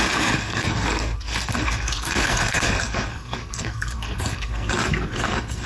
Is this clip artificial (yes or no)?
yes